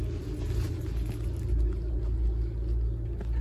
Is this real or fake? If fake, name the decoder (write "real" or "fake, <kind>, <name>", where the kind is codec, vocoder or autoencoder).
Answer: real